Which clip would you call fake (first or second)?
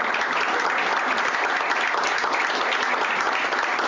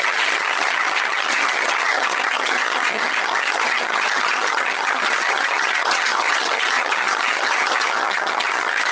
second